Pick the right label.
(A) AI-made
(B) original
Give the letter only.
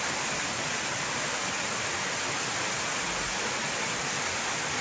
B